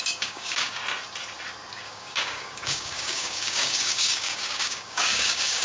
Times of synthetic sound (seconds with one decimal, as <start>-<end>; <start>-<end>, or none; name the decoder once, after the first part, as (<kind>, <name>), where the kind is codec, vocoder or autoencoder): 0.0-0.8 (codec, DAC); 1.7-5.6